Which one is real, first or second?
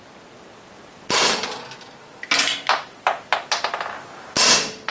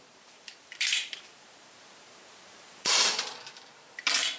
first